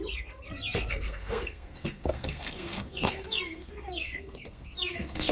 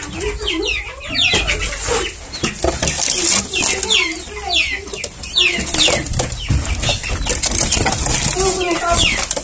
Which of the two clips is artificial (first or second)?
first